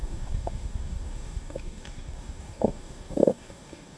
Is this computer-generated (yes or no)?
yes